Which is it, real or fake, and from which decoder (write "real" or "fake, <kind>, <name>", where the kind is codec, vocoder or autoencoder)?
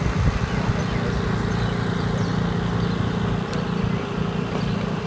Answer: real